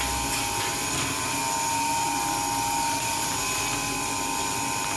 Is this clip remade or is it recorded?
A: recorded